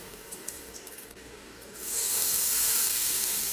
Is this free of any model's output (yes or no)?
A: no